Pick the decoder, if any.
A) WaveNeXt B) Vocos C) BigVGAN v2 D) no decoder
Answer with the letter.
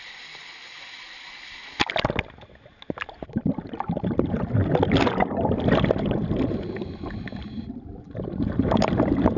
D